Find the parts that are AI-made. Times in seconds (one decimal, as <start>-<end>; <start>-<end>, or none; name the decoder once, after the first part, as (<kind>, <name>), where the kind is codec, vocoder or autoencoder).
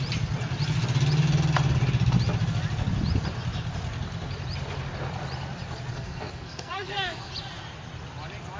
5.9-7.3 (codec, SNAC)